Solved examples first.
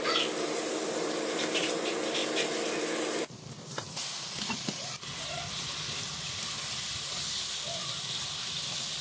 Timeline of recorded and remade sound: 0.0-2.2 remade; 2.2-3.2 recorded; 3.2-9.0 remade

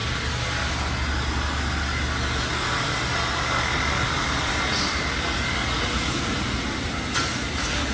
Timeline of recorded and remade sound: 0.0-7.9 recorded

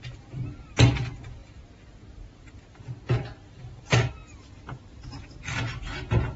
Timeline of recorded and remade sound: 0.0-6.4 recorded

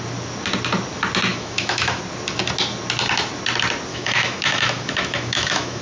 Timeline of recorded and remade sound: 0.0-1.3 recorded; 1.3-2.0 remade; 2.0-3.9 recorded; 3.9-5.8 remade

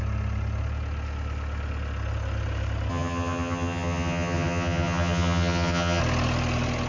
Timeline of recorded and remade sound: 0.0-2.9 recorded; 2.9-6.0 remade; 6.0-6.9 recorded